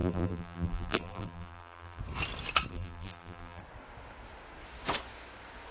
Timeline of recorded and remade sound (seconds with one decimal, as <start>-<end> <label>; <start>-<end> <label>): 0.0-2.0 remade; 2.0-2.7 recorded; 2.7-3.6 remade; 3.6-5.7 recorded